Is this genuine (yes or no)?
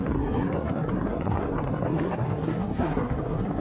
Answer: no